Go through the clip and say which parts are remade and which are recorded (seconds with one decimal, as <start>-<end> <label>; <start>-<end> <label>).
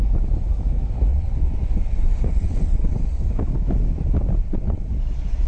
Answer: 0.0-1.1 recorded; 1.1-3.3 remade; 3.3-4.4 recorded; 4.4-4.9 remade; 4.9-5.5 recorded